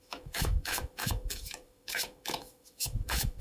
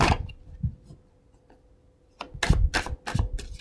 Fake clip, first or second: first